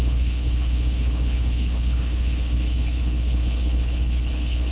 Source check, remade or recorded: remade